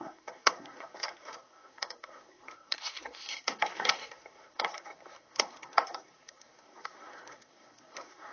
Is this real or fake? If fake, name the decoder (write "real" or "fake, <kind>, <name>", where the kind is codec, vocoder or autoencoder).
fake, codec, SNAC